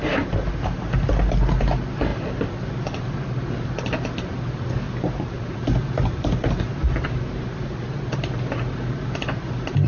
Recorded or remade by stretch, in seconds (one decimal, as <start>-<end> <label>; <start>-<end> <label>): 0.0-9.9 recorded